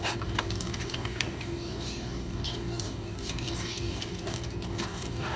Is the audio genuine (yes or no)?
no